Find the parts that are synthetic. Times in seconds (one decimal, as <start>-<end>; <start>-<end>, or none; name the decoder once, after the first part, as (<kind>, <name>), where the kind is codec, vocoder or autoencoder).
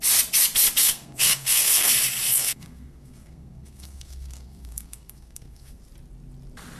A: 0.8-1.9 (codec, SNAC); 2.3-5.8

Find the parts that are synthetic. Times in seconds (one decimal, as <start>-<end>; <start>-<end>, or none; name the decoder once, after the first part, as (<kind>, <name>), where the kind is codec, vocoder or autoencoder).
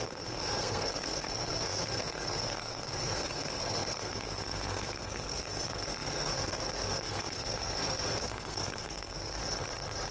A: 0.0-9.4 (codec, SNAC)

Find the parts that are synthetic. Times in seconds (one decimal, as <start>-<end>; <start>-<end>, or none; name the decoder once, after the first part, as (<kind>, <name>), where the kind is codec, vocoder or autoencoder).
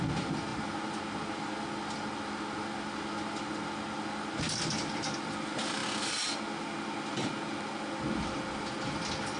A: none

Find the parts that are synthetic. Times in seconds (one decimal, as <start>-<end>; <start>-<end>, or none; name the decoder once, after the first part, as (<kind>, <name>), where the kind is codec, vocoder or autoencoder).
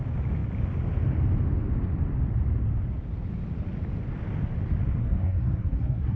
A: 5.0-6.2 (codec, SNAC)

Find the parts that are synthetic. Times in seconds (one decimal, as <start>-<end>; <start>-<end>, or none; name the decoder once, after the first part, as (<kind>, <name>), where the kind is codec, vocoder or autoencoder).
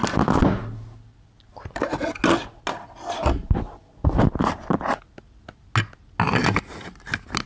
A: none